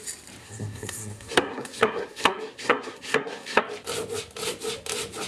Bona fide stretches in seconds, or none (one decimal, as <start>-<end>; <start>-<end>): 0.0-0.4; 3.6-5.3